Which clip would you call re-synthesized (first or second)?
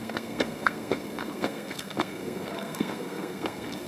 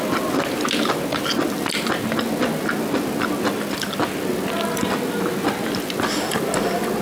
first